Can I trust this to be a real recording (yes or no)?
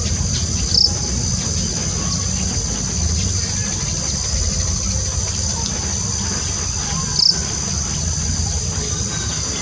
yes